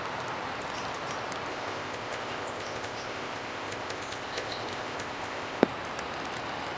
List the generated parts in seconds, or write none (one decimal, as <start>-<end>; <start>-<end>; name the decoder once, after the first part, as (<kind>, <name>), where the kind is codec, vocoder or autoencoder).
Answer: 1.5-5.6 (codec, ZipCodec)

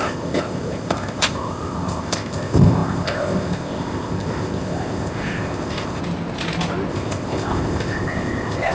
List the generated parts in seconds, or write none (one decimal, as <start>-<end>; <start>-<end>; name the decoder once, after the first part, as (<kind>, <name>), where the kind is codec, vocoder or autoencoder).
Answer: 0.0-6.0 (codec, ZipCodec); 6.9-8.7

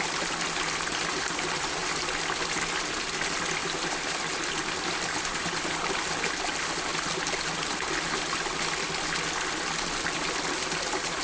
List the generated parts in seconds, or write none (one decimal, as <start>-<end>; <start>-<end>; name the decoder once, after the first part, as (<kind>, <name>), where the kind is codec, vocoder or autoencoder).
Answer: none

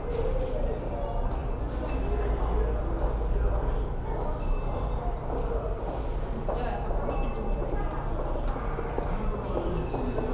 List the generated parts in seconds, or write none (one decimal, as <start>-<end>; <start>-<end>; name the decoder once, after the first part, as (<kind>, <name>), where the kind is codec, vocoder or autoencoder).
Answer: none

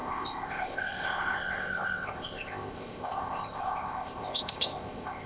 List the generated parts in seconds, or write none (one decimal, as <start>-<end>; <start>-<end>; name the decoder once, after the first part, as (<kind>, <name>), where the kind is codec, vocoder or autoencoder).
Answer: 0.0-5.3 (codec, ZipCodec)